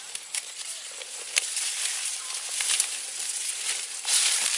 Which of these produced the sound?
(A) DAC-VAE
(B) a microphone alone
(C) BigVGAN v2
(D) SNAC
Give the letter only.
C